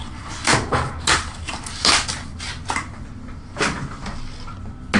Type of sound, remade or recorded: recorded